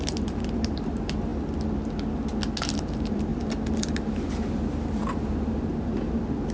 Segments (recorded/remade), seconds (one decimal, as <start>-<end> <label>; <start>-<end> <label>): 0.0-1.3 remade; 1.3-2.6 recorded; 2.6-3.3 remade; 3.3-4.5 recorded; 4.5-6.5 remade